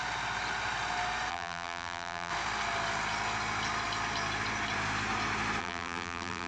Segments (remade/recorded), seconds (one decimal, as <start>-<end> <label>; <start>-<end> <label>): 0.0-1.3 recorded; 1.3-2.3 remade; 2.3-5.6 recorded; 5.6-6.5 remade